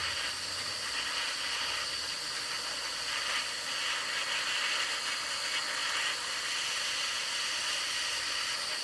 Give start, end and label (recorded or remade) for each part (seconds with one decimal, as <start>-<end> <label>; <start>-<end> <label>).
0.0-5.8 recorded; 5.8-6.9 remade; 6.9-8.8 recorded